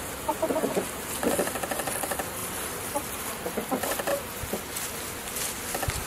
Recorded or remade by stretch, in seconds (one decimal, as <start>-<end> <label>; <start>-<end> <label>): 0.0-2.4 recorded; 2.4-3.4 remade; 3.4-6.1 recorded